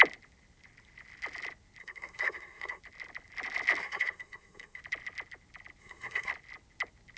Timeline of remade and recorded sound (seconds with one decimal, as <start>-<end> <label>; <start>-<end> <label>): 0.0-1.8 recorded; 1.8-2.8 remade; 2.8-3.8 recorded; 3.8-4.8 remade; 4.8-5.8 recorded; 5.8-6.3 remade; 6.3-7.2 recorded